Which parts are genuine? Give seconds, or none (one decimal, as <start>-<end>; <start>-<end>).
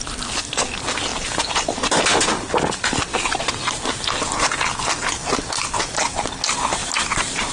0.0-1.1; 2.2-6.8